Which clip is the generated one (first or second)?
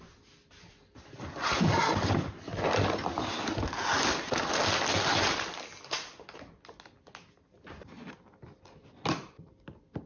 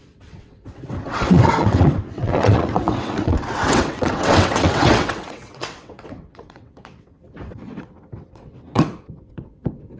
second